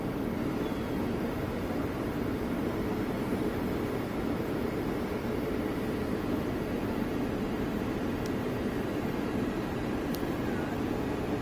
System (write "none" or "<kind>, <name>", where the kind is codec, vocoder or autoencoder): none